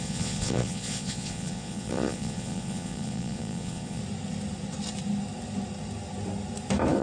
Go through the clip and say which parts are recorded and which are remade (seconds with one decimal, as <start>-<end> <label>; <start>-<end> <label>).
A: 0.0-4.0 remade; 4.0-7.0 recorded